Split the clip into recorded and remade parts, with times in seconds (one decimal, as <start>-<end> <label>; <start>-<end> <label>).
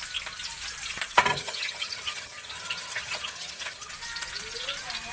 0.0-1.3 recorded; 1.3-3.9 remade; 3.9-5.1 recorded